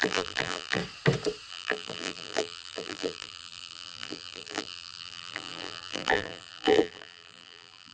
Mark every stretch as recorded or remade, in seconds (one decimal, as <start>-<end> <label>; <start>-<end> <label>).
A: 0.0-0.8 remade; 0.8-1.5 recorded; 1.5-7.9 remade